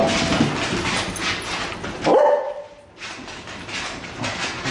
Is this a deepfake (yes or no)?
no